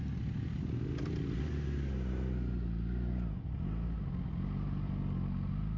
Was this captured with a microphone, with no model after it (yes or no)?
yes